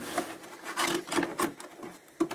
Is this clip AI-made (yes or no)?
no